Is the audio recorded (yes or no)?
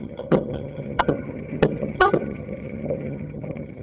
no